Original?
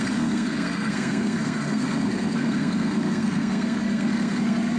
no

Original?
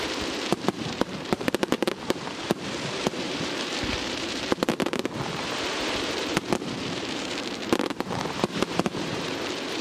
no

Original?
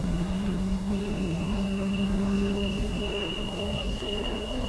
no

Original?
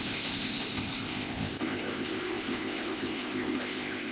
no